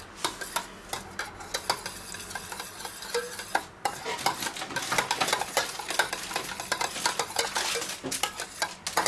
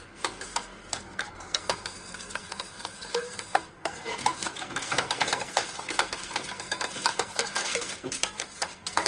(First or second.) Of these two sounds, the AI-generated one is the second